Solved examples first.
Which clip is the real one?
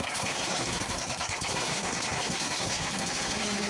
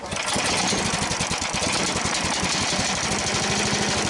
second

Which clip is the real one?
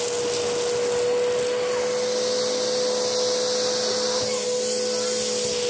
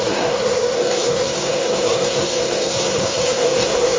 first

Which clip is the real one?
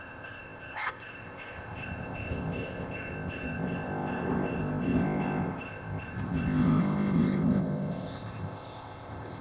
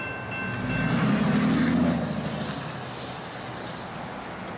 second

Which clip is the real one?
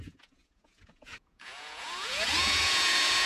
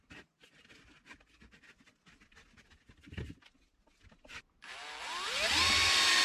second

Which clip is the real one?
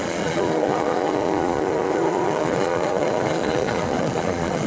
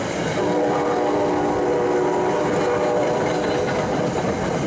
second